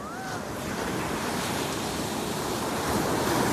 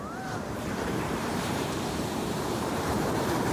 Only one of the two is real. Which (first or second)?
first